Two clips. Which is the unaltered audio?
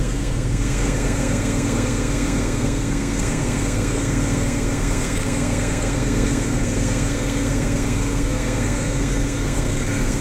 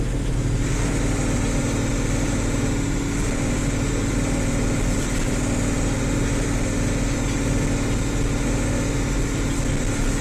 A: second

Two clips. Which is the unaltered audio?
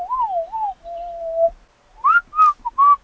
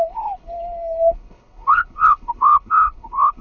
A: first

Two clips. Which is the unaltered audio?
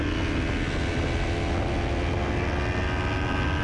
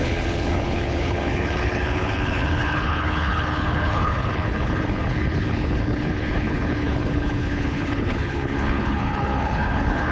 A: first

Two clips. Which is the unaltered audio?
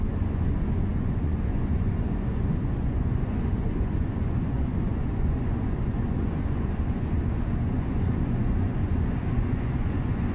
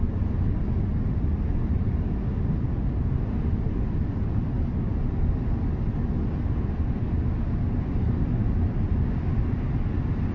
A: second